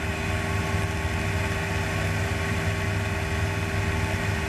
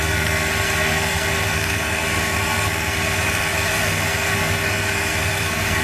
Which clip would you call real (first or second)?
first